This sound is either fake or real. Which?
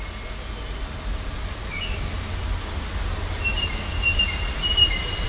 real